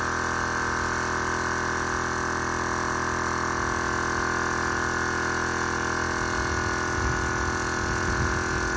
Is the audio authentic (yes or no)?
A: yes